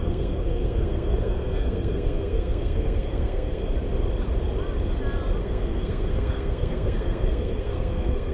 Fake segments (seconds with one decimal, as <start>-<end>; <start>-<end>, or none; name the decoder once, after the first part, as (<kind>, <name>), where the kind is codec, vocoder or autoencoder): 0.0-3.6 (codec, SNAC); 5.4-8.3